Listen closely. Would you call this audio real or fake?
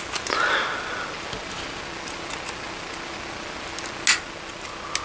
real